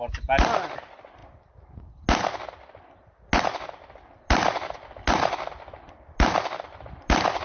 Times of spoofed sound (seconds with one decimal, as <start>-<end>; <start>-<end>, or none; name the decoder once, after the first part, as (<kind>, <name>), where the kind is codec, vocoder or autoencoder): none